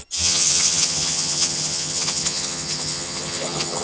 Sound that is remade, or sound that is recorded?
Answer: remade